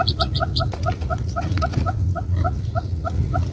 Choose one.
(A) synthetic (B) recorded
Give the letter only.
A